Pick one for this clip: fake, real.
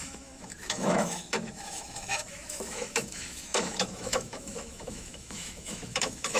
fake